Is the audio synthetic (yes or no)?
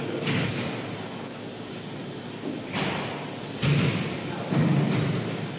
no